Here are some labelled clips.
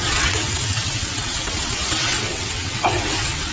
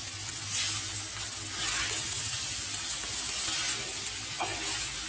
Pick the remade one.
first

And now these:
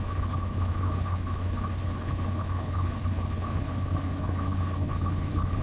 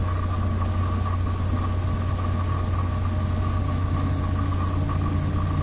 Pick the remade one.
first